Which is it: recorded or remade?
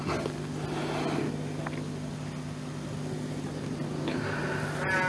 recorded